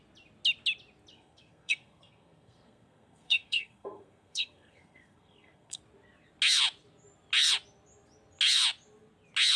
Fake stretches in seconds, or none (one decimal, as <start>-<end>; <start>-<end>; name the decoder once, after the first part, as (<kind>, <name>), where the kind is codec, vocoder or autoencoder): 1.1-5.8 (codec, SNAC)